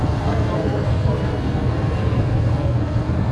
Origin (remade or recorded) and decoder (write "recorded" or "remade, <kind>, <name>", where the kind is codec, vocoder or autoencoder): remade, codec, SNAC